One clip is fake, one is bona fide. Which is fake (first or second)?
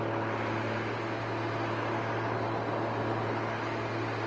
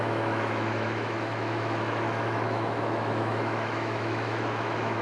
second